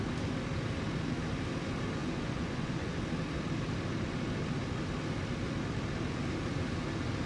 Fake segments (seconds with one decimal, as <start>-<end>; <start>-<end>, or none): 2.0-3.0